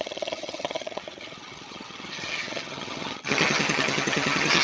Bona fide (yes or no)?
no